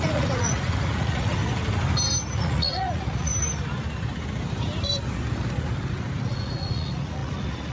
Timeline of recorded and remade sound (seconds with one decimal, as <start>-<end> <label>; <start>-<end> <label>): 0.0-1.4 remade; 1.4-2.4 recorded; 2.4-3.3 remade; 3.3-6.2 recorded; 6.2-7.7 remade